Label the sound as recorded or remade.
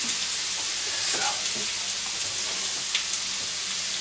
recorded